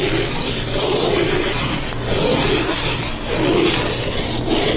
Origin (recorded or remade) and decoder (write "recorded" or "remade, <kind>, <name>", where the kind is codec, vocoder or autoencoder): recorded